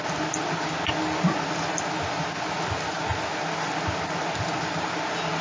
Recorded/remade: recorded